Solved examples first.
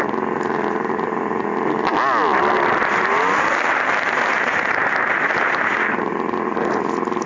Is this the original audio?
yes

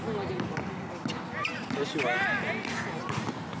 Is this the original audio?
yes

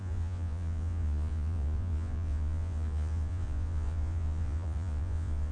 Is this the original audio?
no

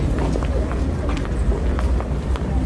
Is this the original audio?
yes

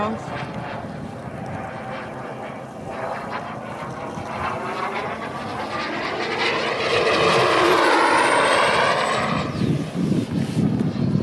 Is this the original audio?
yes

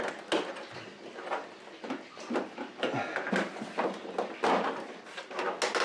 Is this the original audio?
yes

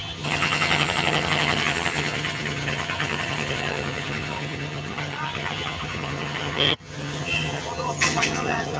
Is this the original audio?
no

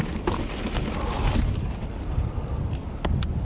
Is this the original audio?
yes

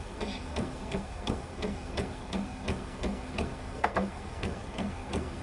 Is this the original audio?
no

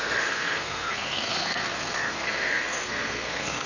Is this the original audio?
no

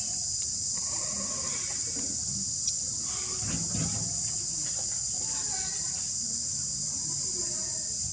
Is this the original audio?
yes